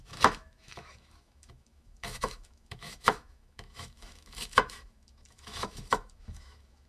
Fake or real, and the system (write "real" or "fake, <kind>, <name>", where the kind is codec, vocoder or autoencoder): fake, autoencoder, DAC-VAE